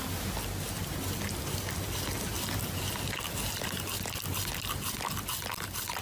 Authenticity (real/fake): real